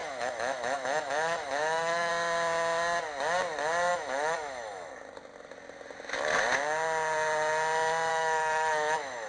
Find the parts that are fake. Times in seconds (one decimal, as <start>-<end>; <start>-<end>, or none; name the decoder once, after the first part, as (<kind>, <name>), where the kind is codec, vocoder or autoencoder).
0.0-2.1 (autoencoder, DAC-VAE); 3.9-4.9; 8.1-9.3